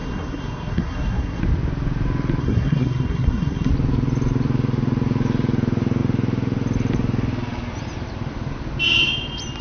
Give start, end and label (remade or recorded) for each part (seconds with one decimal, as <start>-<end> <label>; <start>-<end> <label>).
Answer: 0.0-1.4 remade; 1.4-2.4 recorded; 2.4-3.7 remade; 3.7-9.6 recorded